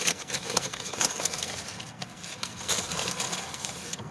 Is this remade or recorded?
remade